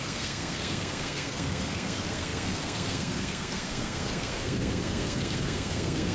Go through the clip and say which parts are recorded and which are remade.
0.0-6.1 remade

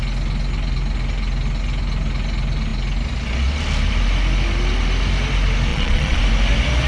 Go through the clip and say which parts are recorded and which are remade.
0.0-5.7 recorded; 5.7-6.2 remade; 6.2-6.9 recorded

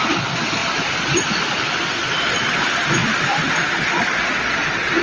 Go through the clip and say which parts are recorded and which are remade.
0.0-5.0 recorded

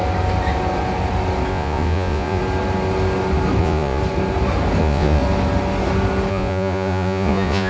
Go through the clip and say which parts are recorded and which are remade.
0.0-1.5 recorded; 1.5-2.4 remade; 2.4-3.6 recorded; 3.6-4.0 remade; 4.0-4.8 recorded; 4.8-5.2 remade; 5.2-6.3 recorded; 6.3-7.7 remade

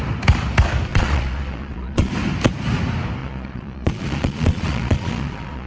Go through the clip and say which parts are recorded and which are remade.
0.0-0.9 recorded; 0.9-2.1 remade; 2.1-3.2 recorded; 3.2-5.7 remade

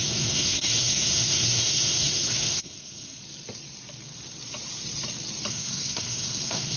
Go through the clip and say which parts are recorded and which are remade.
0.0-3.2 remade; 3.2-5.5 recorded; 5.5-6.8 remade

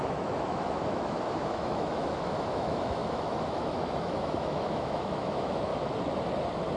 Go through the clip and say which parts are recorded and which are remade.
0.0-5.7 remade; 5.7-6.8 recorded